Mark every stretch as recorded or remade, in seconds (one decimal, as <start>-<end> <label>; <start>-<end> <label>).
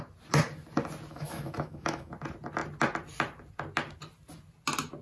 0.0-1.1 recorded; 1.1-2.1 remade; 2.1-5.0 recorded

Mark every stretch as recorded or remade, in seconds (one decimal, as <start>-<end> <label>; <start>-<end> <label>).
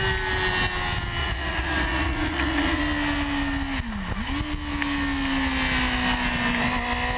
0.0-1.2 recorded; 1.2-2.8 remade; 2.8-7.2 recorded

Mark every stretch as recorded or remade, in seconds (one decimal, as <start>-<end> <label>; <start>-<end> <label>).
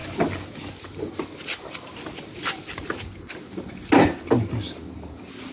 0.0-5.5 recorded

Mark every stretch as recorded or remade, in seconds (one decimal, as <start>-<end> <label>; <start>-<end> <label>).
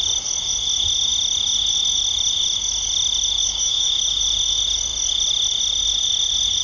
0.0-3.4 recorded; 3.4-4.2 remade; 4.2-6.6 recorded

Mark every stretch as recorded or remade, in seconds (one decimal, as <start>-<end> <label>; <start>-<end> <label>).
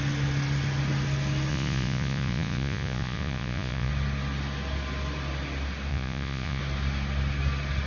0.0-1.5 recorded; 1.5-3.9 remade; 3.9-5.9 recorded; 5.9-6.6 remade; 6.6-7.9 recorded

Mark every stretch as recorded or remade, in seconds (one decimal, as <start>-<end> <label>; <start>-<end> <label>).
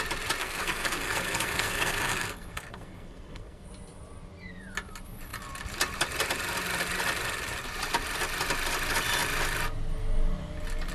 0.0-0.4 recorded; 0.4-3.7 remade; 3.7-10.9 recorded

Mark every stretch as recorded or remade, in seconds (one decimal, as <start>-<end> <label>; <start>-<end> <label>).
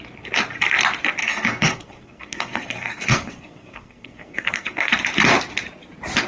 0.0-1.2 recorded; 1.2-4.9 remade; 4.9-6.3 recorded